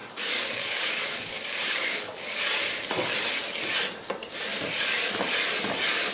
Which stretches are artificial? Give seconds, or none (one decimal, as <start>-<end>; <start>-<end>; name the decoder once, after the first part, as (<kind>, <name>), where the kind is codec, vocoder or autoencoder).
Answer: 0.0-2.4 (codec, DAC)